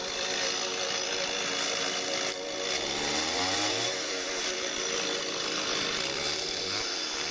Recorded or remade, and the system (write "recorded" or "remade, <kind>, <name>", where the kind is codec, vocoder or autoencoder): remade, vocoder, BigVGAN v2